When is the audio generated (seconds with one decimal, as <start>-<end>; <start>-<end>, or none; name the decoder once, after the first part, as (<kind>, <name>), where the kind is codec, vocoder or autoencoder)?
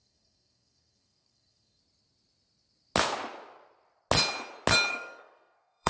0.0-1.8 (codec, SNAC); 4.9-5.9